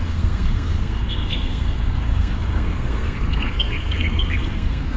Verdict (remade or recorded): remade